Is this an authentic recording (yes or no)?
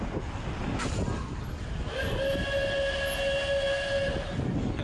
yes